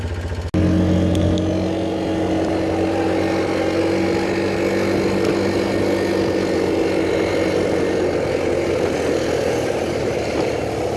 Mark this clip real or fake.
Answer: real